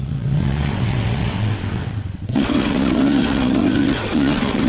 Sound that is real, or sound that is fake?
fake